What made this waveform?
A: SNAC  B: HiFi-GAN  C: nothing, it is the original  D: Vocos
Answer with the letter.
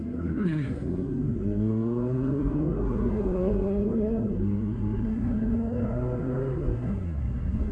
A